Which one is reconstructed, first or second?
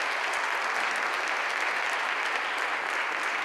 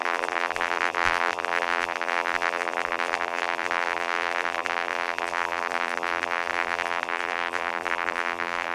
second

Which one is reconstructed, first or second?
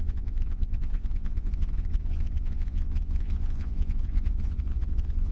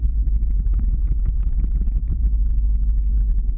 first